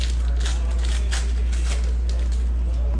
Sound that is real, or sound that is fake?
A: real